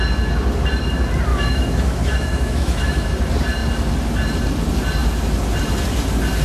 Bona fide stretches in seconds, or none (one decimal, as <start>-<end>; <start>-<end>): 0.0-1.3; 3.1-6.4